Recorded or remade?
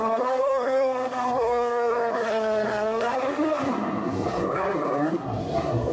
remade